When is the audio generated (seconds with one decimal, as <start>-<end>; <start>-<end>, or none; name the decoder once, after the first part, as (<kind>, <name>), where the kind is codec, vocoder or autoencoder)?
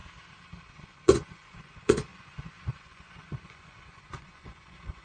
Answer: 0.7-5.0 (vocoder, Vocos)